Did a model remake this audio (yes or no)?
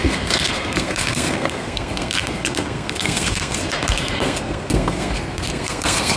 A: yes